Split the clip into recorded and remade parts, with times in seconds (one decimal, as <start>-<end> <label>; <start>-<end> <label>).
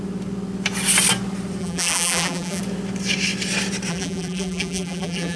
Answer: 0.0-1.6 recorded; 1.6-2.6 remade; 2.6-3.9 recorded; 3.9-5.4 remade